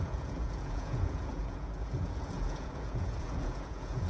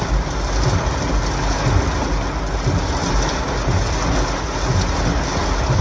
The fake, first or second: first